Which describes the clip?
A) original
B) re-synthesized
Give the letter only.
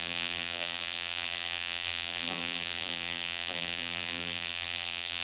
B